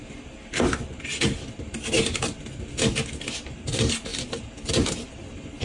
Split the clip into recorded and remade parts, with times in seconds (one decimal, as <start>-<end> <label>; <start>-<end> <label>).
0.0-4.1 recorded; 4.1-5.6 remade